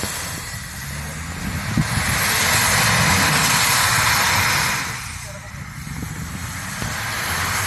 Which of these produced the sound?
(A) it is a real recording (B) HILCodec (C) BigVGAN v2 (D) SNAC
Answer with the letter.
A